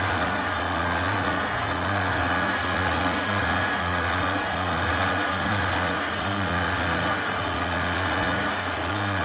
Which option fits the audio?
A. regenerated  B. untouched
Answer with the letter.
A